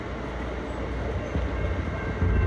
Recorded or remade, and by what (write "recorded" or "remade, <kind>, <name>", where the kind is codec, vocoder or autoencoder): recorded